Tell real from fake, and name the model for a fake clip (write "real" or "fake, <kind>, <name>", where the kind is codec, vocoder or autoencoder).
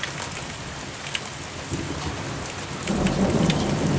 real